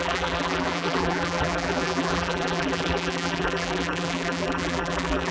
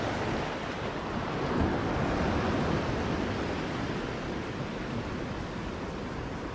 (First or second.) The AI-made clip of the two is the first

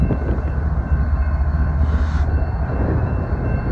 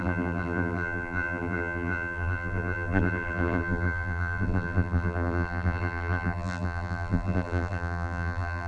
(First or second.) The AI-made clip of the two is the second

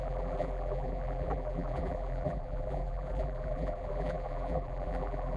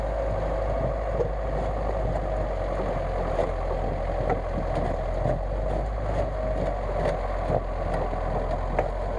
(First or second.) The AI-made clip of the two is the first